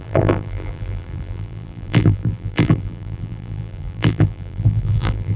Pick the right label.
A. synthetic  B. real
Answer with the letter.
A